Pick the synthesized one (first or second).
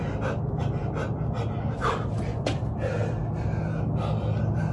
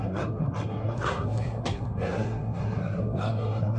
second